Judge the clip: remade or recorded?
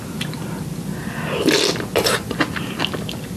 recorded